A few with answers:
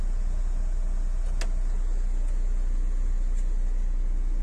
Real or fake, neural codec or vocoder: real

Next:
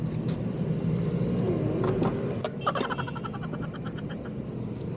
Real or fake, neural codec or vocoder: real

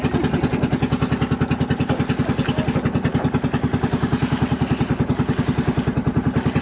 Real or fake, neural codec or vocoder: real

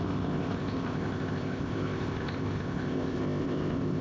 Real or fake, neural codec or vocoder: fake, codec, ZipCodec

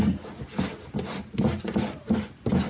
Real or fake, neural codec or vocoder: real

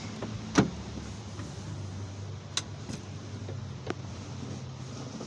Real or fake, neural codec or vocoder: real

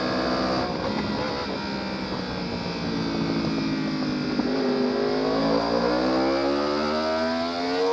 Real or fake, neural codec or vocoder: real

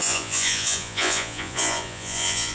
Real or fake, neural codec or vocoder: fake, vocoder, Vocos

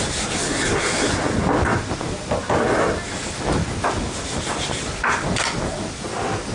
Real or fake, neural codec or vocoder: real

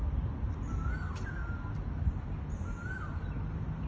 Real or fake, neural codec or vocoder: real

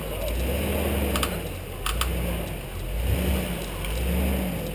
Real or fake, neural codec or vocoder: real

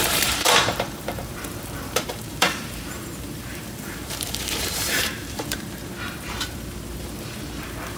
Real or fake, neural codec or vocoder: fake, vocoder, BigVGAN v2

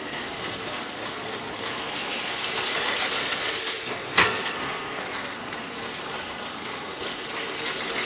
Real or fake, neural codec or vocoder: fake, codec, SNAC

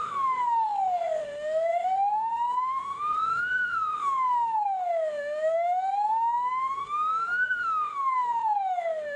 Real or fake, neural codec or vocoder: fake, autoencoder, DAC-VAE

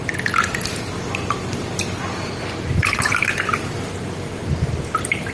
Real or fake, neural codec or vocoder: real